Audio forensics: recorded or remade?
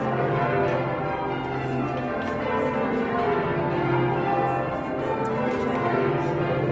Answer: recorded